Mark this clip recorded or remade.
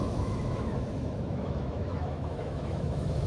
remade